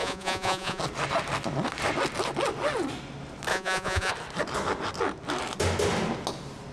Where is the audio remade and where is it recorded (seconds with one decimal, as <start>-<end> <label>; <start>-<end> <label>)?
0.0-0.8 remade; 0.8-3.5 recorded; 3.5-4.1 remade; 4.1-6.7 recorded